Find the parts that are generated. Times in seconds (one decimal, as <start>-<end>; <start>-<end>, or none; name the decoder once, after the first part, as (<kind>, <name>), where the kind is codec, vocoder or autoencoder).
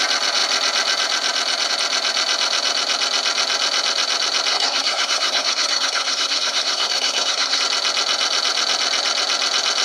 4.5-7.6 (codec, SNAC)